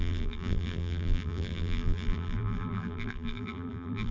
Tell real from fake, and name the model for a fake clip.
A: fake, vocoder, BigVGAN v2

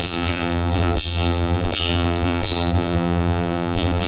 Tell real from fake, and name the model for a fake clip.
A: fake, vocoder, BigVGAN v2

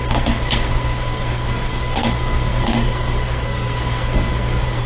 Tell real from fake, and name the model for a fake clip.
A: fake, codec, SNAC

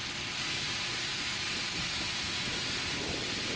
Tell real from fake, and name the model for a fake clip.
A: real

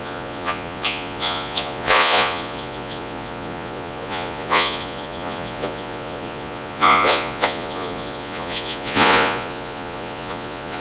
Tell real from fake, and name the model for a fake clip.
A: fake, vocoder, Vocos